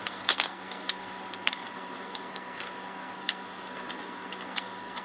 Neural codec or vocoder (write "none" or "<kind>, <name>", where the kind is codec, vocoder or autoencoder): codec, SNAC